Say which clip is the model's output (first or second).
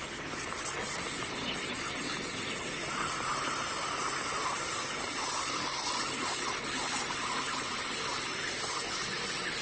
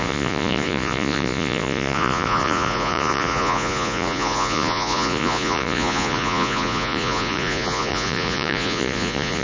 second